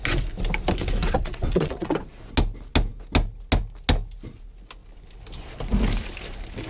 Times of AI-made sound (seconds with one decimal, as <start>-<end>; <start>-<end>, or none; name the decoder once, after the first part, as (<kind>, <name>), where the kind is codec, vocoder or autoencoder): 1.0-2.1 (vocoder, WaveNeXt)